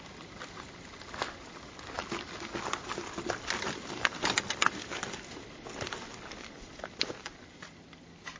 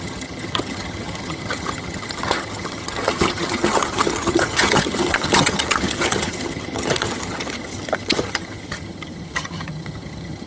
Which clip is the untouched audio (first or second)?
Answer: first